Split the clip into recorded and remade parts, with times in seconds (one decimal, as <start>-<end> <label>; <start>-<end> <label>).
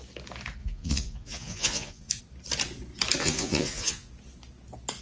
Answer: 0.0-0.6 recorded; 0.6-2.2 remade; 2.2-3.2 recorded; 3.2-4.1 remade; 4.1-5.0 recorded